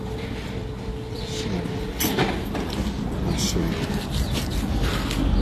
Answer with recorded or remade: recorded